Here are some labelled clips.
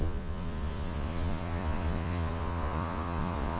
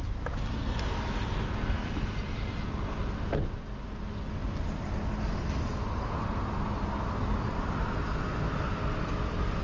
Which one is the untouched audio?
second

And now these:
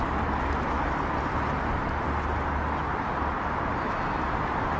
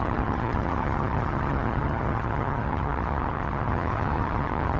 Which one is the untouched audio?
first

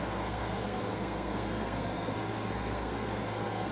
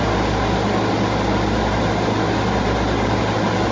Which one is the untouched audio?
second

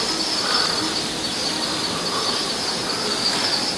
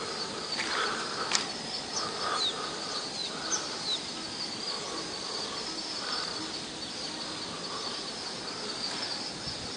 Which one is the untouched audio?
first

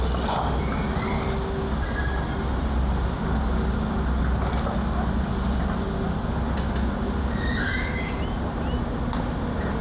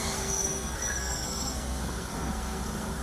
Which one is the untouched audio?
first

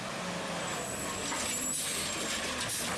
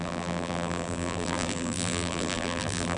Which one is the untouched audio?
first